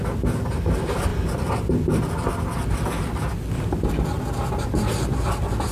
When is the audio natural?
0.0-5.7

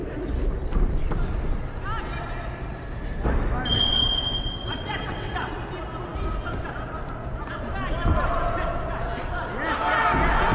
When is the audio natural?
0.0-3.7; 5.5-10.5

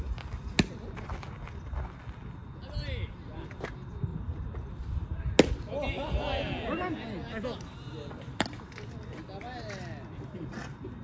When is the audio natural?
0.0-4.1; 5.2-11.0